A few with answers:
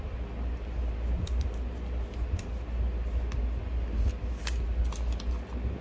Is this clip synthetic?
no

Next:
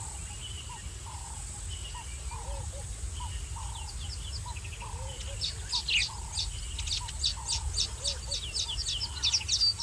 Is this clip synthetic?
no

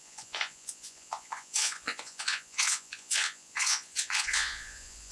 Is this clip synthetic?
yes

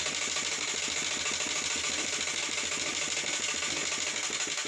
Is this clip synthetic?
no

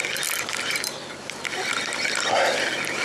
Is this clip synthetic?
no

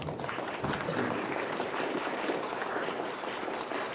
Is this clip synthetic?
yes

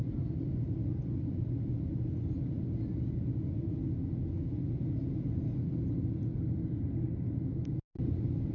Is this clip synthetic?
no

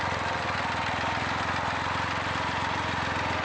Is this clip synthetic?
no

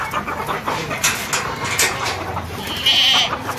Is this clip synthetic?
no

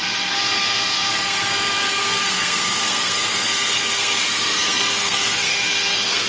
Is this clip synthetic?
yes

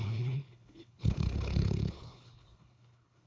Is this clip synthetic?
yes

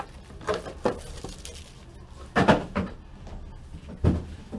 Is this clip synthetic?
no